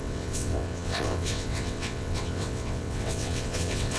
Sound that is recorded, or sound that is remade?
remade